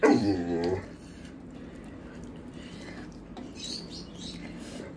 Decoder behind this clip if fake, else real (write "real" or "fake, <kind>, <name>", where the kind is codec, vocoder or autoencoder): fake, vocoder, BigVGAN v2